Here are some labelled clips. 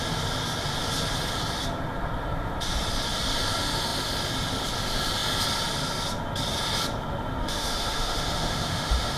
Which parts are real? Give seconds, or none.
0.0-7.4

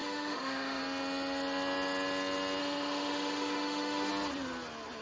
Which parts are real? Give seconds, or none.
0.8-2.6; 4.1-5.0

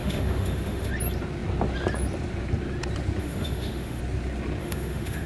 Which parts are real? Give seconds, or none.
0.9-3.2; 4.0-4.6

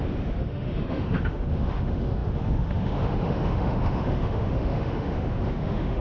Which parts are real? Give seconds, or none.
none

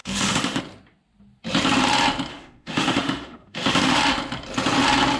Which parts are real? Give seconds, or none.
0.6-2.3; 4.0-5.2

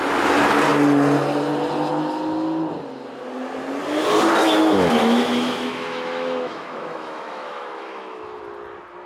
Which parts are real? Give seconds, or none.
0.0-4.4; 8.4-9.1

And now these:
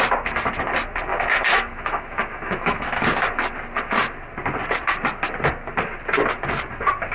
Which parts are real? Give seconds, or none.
0.0-1.1; 3.0-7.1